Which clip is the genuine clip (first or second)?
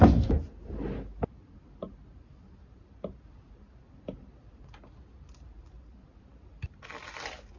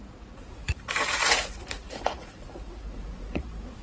first